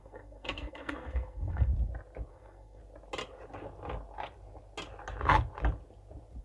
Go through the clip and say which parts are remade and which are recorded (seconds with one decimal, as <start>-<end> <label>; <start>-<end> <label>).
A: 0.0-1.7 remade; 1.7-2.3 recorded; 2.3-2.8 remade; 2.8-6.4 recorded